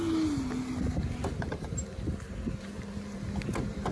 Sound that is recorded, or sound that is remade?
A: recorded